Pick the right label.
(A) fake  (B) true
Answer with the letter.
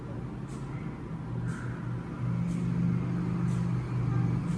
B